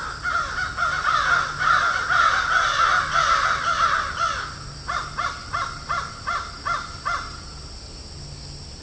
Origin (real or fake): real